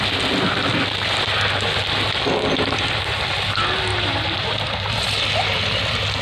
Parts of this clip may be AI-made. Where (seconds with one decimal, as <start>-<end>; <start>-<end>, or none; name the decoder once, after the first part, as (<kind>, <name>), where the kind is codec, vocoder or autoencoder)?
3.9-5.1 (vocoder, BigVGAN v2)